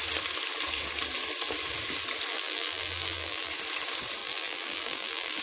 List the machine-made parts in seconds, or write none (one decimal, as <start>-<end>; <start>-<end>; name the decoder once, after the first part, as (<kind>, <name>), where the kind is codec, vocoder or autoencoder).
2.3-3.5 (vocoder, BigVGAN v2); 4.2-5.4